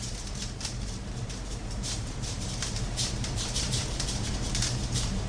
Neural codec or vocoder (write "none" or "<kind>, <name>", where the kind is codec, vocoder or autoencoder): vocoder, BigVGAN v2